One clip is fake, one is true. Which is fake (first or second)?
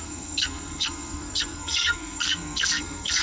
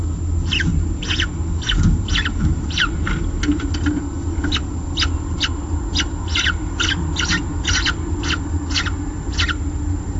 first